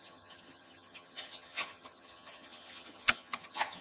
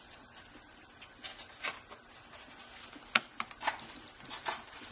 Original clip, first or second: second